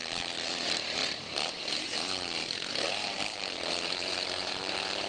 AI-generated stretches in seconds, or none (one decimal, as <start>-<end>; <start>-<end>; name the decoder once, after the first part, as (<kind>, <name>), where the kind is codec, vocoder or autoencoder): 0.0-5.1 (vocoder, BigVGAN v2)